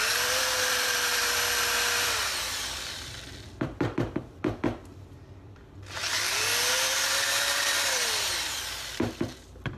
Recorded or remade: remade